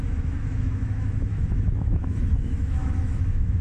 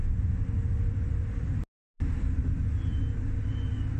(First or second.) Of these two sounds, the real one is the second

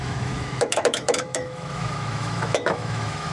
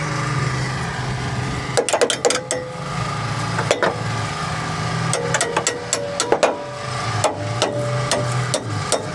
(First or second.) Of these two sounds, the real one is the second